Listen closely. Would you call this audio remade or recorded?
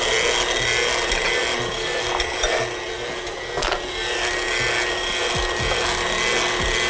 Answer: recorded